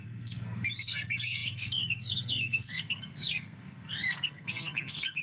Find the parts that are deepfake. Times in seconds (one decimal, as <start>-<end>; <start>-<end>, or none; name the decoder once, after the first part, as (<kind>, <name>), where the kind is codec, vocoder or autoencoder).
0.0-5.2 (codec, SNAC)